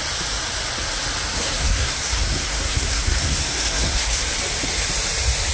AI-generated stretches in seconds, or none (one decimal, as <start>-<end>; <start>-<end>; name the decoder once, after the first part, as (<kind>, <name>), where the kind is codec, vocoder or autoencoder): 1.3-4.2 (codec, SNAC)